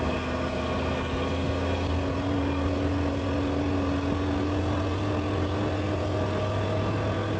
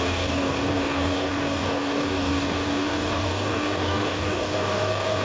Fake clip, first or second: second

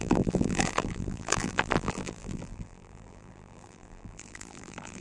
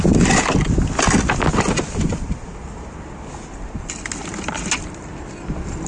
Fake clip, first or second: first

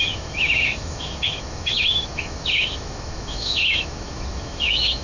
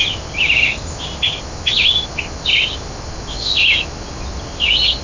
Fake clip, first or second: first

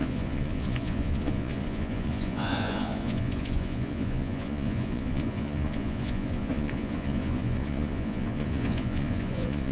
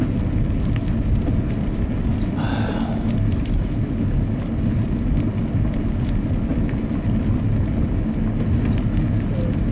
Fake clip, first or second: first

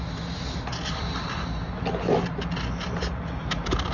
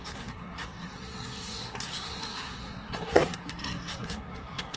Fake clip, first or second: second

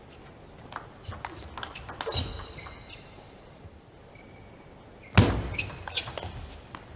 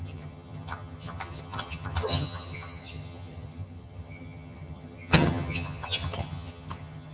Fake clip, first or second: second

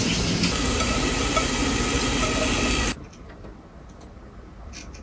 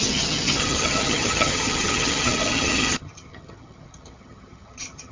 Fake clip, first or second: second